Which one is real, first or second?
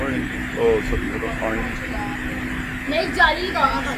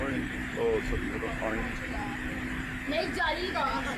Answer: first